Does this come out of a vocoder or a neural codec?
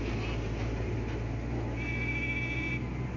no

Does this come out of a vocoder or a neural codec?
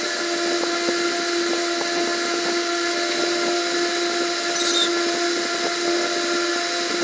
no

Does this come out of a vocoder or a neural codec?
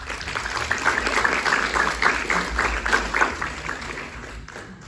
no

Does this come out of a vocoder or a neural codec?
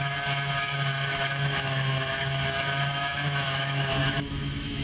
yes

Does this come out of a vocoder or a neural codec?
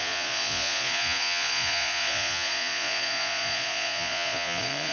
yes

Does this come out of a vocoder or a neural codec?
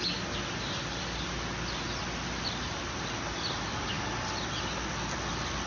no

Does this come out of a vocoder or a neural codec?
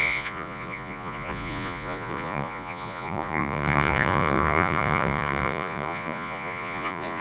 yes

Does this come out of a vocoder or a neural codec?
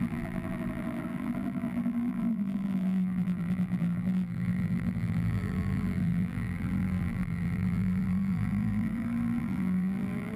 yes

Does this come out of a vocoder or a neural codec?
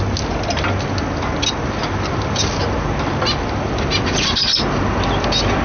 no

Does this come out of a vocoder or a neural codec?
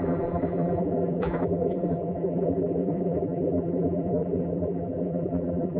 yes